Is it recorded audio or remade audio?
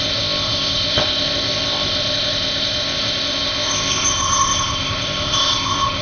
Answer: remade